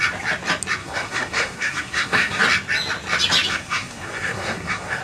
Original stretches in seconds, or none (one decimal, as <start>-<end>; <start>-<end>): 0.0-0.8; 2.4-3.5

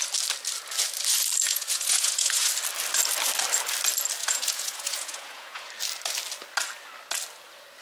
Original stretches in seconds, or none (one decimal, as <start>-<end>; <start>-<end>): 0.0-1.5; 2.5-4.2; 5.7-7.8

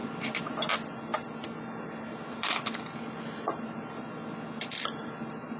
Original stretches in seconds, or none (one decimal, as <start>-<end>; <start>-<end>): 0.0-5.6

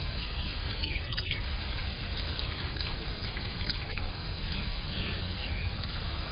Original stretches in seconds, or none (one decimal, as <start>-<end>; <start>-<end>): none